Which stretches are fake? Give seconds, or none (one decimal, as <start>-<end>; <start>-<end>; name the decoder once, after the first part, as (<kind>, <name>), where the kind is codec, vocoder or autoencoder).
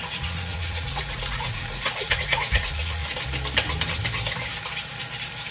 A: 0.0-3.0 (vocoder, Vocos)